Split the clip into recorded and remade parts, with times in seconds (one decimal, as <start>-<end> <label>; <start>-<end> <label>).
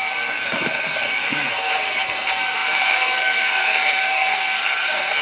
0.0-5.2 remade